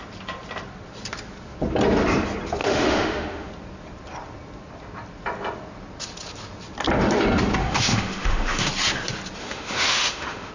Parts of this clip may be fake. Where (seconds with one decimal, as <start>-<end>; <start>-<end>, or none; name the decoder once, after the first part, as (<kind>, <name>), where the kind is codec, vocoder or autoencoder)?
2.6-3.5 (autoencoder, DAC-VAE); 7.6-8.7; 9.4-10.5